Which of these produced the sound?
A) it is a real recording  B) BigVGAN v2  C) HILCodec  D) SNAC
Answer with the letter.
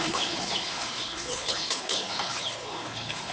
C